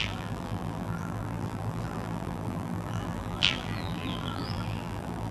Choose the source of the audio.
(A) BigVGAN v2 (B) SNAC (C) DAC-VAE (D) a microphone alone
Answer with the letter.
A